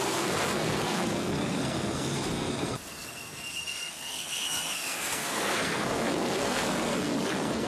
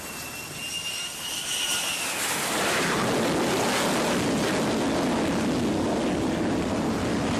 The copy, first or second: first